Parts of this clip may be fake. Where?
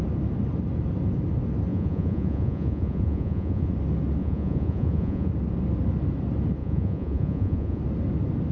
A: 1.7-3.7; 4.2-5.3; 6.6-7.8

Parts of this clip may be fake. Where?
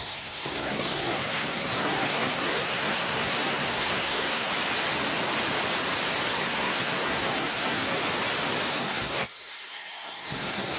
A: 0.0-4.5; 6.3-8.0; 8.7-10.8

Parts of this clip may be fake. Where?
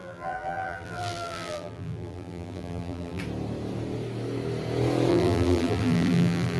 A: 0.0-3.2; 5.1-6.6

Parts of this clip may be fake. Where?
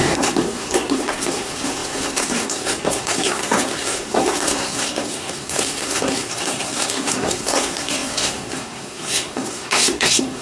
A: 0.0-10.4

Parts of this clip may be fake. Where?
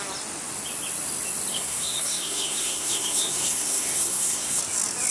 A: 1.5-4.6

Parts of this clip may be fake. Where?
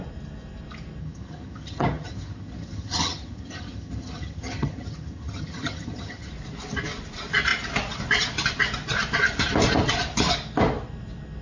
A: 1.0-6.3